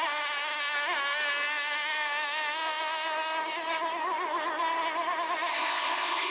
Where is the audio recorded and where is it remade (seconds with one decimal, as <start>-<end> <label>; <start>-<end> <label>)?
0.0-5.5 recorded; 5.5-6.3 remade